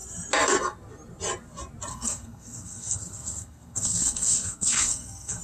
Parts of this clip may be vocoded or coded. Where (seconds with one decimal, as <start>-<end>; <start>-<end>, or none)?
1.9-5.4